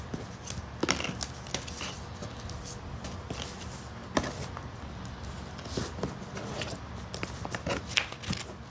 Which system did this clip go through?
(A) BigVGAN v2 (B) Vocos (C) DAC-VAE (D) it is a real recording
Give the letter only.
D